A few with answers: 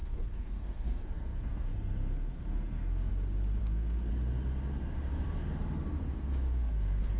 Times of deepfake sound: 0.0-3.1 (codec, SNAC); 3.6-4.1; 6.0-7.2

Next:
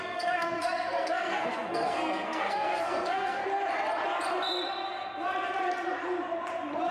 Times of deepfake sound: 0.0-3.4 (codec, SNAC)

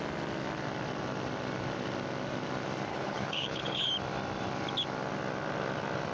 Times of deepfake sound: 2.9-3.9 (codec, HILCodec)

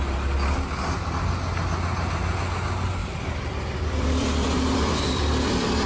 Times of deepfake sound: 3.0-5.9 (vocoder, BigVGAN v2)